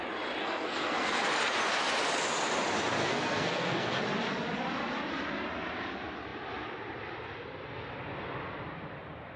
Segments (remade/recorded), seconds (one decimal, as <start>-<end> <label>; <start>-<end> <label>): 0.0-0.4 recorded; 0.4-1.3 remade; 1.3-3.0 recorded; 3.0-4.0 remade; 4.0-9.4 recorded